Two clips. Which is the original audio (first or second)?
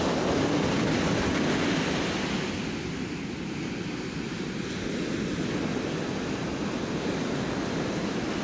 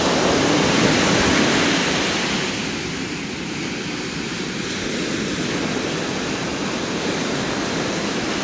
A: first